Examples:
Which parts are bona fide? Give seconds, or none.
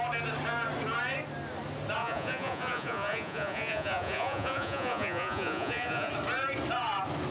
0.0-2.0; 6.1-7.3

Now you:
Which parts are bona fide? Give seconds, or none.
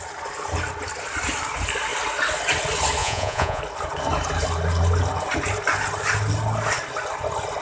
0.0-3.0; 3.6-7.6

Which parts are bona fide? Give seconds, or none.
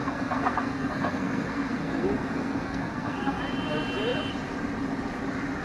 3.4-5.6